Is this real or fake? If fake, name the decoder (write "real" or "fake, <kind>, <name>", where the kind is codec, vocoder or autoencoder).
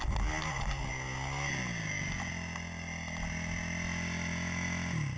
real